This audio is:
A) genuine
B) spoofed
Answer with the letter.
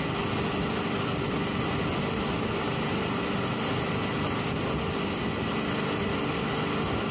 A